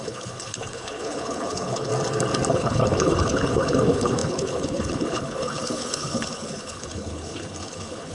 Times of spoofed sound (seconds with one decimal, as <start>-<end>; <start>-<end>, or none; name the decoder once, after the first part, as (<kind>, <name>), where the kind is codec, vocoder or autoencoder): 0.0-1.9 (codec, HILCodec); 2.5-8.1